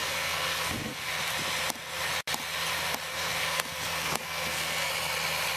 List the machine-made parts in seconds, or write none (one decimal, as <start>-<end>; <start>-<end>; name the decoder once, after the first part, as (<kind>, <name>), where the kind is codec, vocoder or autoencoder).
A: 0.0-1.1 (codec, SNAC); 3.1-4.9